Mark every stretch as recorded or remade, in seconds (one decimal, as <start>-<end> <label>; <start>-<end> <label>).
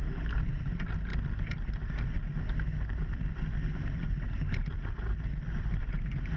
0.0-1.1 remade; 1.1-4.0 recorded; 4.0-4.6 remade; 4.6-5.8 recorded; 5.8-6.4 remade